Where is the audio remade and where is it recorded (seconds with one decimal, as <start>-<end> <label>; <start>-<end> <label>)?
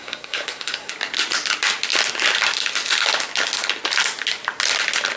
0.0-0.9 remade; 0.9-5.2 recorded